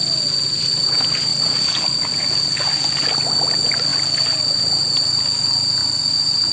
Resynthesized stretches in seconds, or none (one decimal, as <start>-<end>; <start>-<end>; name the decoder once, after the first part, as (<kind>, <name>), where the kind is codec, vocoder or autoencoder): none